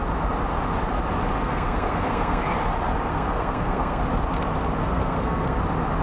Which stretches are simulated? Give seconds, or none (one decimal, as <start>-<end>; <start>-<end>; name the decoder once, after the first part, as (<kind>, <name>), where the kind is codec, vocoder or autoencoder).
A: 1.4-2.4 (codec, SNAC); 3.1-4.0; 4.8-5.6